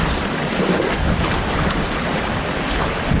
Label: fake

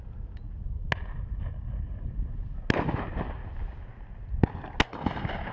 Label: real